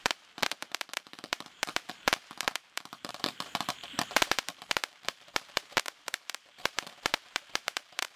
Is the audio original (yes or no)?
no